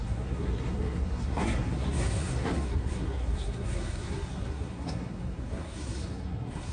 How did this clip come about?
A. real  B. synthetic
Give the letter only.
B